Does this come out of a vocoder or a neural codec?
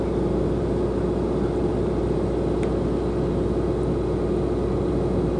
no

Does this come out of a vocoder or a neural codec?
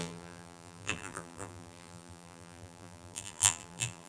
yes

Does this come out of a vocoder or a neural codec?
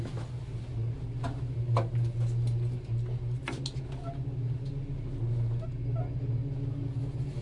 no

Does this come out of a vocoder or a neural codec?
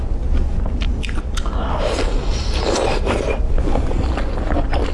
no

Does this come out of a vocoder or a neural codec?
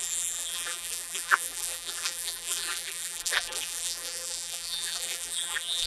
yes